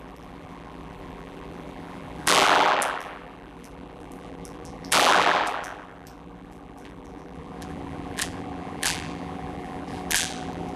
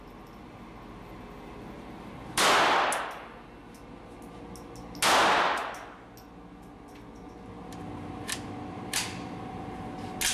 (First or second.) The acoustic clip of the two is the second